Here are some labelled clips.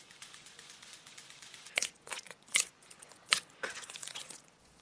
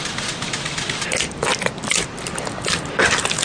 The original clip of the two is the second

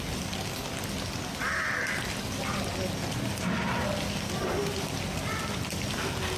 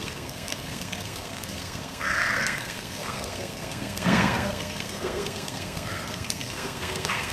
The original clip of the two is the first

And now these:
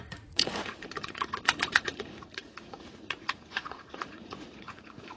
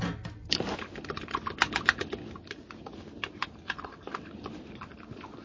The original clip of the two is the second